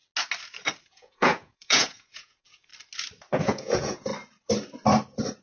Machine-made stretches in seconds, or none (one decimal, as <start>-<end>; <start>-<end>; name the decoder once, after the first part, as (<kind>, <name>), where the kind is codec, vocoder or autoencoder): 0.8-2.7 (vocoder, Vocos); 3.4-4.1